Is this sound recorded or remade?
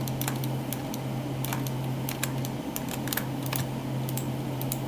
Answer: recorded